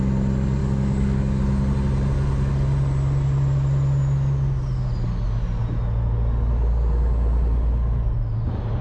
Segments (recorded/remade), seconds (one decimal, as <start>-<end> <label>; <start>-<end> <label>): 0.0-0.6 recorded; 0.6-1.4 remade; 1.4-8.8 recorded